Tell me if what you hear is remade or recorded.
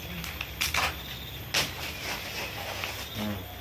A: recorded